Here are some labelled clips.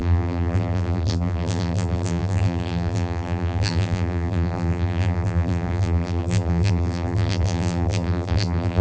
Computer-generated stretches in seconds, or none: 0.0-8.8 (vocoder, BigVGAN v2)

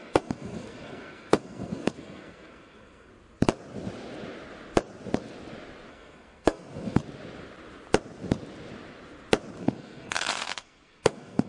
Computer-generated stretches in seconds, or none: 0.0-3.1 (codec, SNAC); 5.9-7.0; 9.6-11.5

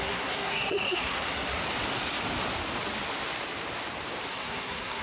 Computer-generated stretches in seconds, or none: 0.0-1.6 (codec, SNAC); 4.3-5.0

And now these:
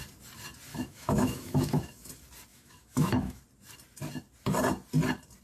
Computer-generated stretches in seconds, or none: 0.7-2.1 (autoencoder, DAC-VAE); 2.5-3.4

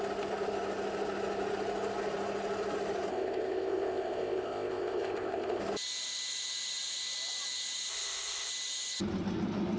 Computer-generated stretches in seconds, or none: 3.1-5.6 (codec, ZipCodec); 7.9-8.5